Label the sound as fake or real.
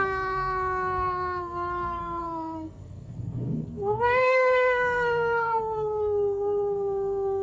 fake